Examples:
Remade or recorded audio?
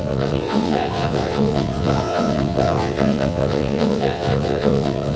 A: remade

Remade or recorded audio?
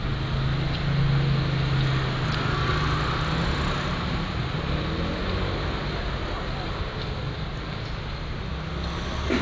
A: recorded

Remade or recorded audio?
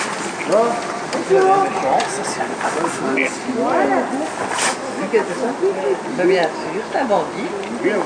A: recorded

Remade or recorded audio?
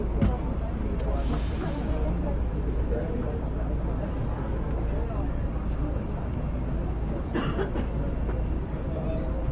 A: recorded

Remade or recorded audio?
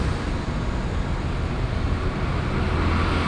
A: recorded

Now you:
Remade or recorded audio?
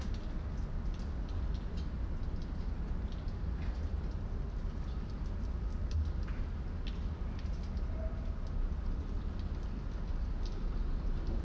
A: recorded